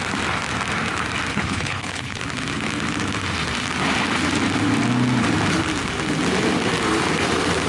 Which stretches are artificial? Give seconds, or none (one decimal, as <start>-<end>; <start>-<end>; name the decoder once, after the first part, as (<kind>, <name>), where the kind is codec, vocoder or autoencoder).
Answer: 1.3-2.2 (codec, HILCodec)

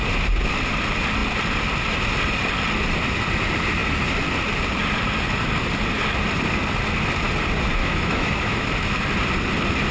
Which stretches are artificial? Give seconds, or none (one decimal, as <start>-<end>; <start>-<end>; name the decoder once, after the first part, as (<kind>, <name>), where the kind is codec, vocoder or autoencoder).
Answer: 7.8-8.7 (autoencoder, DAC-VAE)

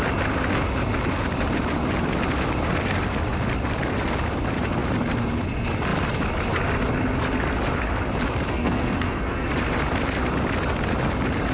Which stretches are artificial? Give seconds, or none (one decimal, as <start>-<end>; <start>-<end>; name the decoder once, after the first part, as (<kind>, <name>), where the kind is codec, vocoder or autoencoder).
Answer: 8.5-9.5 (codec, SNAC)

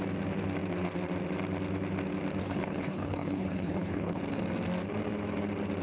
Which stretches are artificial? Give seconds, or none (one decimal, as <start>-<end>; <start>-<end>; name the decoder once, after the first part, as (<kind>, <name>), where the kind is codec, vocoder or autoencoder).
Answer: 2.4-4.2 (codec, HILCodec)

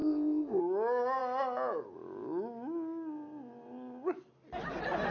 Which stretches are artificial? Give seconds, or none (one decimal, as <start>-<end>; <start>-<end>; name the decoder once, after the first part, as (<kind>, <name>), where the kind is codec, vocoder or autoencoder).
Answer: 0.0-0.6 (codec, ZipCodec)

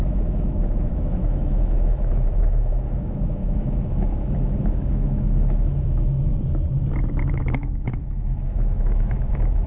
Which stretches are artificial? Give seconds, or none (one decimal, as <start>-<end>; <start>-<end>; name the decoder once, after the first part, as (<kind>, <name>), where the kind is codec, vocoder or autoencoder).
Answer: 0.0-6.3 (autoencoder, DAC-VAE); 7.1-9.7

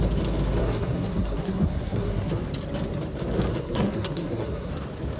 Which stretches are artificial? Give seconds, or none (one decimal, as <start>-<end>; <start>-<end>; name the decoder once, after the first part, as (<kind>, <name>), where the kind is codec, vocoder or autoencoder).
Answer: 0.6-2.4 (codec, SNAC); 3.5-4.7